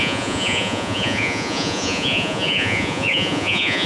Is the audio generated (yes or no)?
yes